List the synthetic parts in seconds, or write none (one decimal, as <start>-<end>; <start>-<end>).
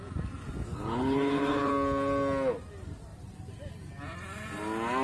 0.7-1.7